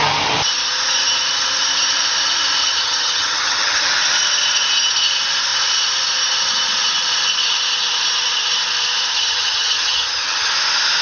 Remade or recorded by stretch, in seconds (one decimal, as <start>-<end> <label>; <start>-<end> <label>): 0.0-2.6 recorded; 2.6-3.9 remade; 3.9-9.1 recorded; 9.1-10.5 remade; 10.5-11.0 recorded